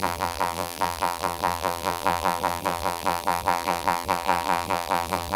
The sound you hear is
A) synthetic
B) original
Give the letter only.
A